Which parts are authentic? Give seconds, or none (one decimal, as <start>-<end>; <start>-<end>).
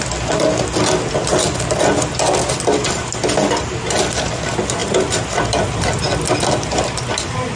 0.0-4.8; 5.4-7.6